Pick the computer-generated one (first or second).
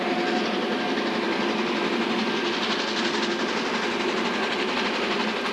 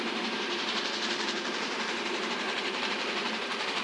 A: second